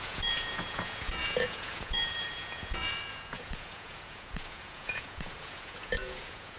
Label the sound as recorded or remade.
remade